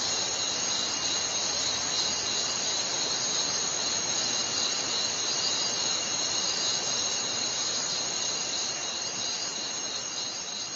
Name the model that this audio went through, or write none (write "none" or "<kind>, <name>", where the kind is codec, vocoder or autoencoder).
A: vocoder, BigVGAN v2